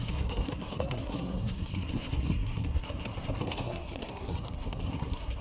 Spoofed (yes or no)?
yes